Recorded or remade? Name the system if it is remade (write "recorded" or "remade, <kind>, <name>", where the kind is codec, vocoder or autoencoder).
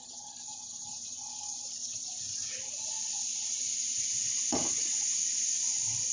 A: remade, vocoder, BigVGAN v2